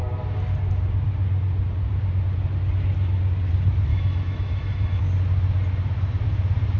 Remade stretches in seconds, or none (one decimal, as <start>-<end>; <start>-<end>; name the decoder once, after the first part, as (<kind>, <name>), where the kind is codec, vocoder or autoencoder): 3.9-5.0 (autoencoder, DAC-VAE)